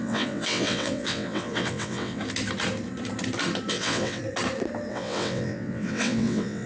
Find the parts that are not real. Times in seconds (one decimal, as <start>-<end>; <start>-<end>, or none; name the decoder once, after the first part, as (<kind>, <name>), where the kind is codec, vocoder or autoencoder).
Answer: 0.0-2.2 (vocoder, WaveNeXt); 3.7-4.2; 4.9-6.7